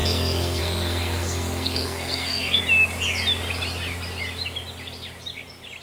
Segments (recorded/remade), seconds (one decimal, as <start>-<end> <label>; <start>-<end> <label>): 0.0-2.6 remade; 2.6-5.8 recorded